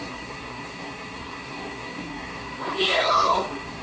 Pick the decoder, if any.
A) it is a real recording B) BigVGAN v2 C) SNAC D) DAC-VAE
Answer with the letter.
C